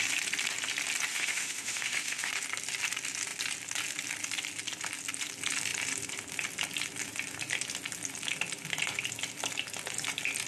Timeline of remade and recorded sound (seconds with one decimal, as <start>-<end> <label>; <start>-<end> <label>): 0.0-1.1 recorded; 1.1-2.3 remade; 2.3-10.5 recorded